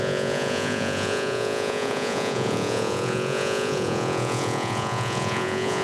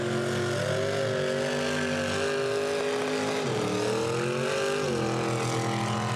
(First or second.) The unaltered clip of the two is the second